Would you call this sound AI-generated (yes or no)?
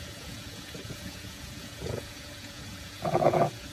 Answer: yes